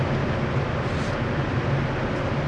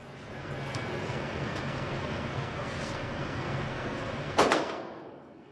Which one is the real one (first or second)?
first